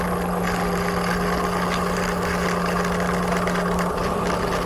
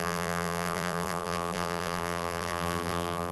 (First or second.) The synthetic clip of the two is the second